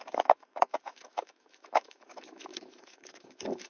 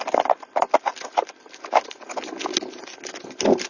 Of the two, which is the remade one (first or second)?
first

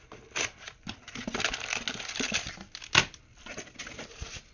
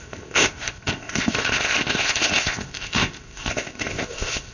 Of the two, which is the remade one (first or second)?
second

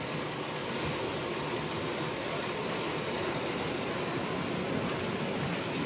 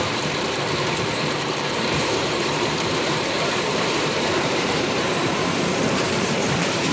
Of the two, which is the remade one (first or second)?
second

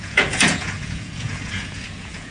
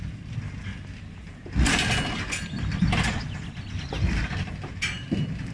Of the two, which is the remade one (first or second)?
first